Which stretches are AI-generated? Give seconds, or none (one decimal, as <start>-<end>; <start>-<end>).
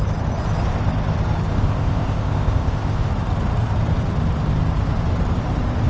1.5-3.1